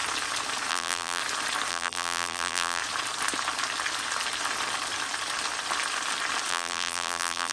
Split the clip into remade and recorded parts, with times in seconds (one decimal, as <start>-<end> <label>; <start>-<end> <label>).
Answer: 0.0-0.7 recorded; 0.7-1.2 remade; 1.2-1.7 recorded; 1.7-2.8 remade; 2.8-6.5 recorded; 6.5-7.5 remade